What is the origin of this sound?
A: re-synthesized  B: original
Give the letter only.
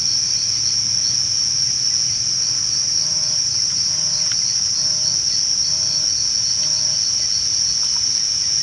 B